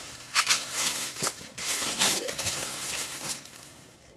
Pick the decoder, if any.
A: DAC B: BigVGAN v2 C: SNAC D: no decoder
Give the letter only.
C